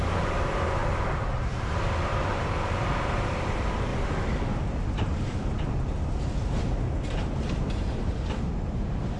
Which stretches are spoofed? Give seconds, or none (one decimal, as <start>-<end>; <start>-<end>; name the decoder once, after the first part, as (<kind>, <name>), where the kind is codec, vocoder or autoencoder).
0.0-0.8 (vocoder, BigVGAN v2); 1.6-3.9; 7.0-9.2

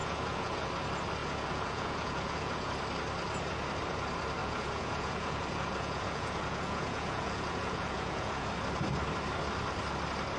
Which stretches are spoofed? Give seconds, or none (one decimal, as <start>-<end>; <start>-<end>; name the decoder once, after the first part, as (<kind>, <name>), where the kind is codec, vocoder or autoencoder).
0.0-0.7 (vocoder, Vocos); 1.2-2.7; 4.4-8.6

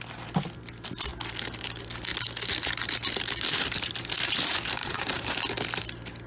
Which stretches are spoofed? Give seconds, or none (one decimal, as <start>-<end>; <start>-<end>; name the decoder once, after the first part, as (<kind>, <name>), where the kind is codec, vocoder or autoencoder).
4.8-5.4 (vocoder, BigVGAN v2)

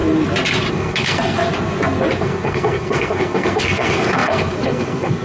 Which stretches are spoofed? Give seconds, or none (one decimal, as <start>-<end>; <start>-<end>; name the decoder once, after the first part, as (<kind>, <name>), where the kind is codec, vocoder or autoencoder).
0.7-1.4 (codec, SNAC); 2.2-5.2

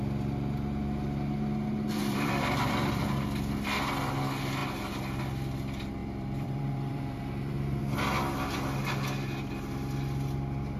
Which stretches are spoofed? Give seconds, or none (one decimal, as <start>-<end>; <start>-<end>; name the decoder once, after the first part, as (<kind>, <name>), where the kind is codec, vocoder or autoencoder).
2.0-3.1 (vocoder, BigVGAN v2); 6.0-7.8

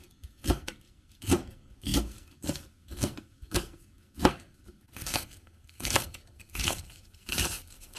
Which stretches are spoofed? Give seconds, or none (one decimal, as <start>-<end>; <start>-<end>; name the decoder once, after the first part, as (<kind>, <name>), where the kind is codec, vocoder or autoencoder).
0.0-8.0 (codec, SNAC)

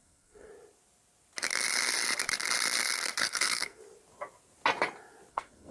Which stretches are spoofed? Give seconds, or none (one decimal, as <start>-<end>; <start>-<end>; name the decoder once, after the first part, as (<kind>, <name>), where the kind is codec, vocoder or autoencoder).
0.0-0.5 (codec, SNAC); 3.2-3.8; 5.3-5.7